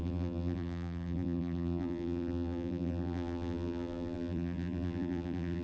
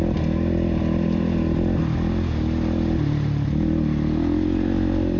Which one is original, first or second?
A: second